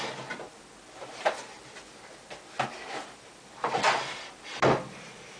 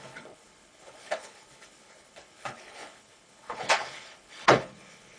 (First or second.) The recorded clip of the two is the first